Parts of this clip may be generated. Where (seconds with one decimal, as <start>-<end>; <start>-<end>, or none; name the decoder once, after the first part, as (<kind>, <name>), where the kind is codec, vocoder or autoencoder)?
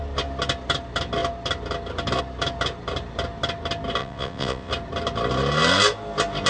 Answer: 4.0-4.7 (vocoder, WaveNeXt)